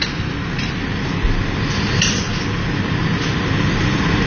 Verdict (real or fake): real